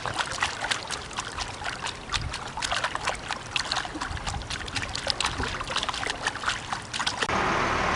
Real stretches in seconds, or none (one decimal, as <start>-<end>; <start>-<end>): 0.0-7.0; 7.6-8.0

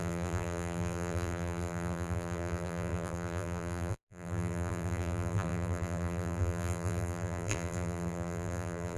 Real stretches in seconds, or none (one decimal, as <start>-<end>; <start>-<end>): none

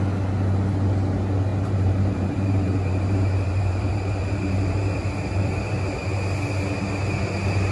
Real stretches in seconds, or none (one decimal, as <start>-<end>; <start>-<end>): 0.0-1.5; 5.8-7.7